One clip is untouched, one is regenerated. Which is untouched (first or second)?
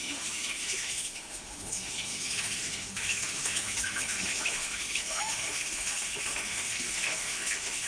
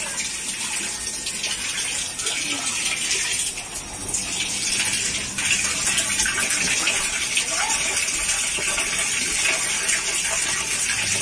second